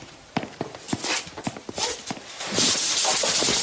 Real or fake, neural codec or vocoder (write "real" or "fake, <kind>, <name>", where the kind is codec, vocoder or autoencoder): real